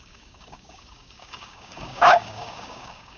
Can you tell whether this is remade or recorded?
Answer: remade